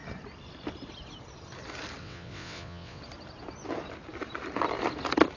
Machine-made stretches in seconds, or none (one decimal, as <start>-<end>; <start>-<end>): 2.0-3.0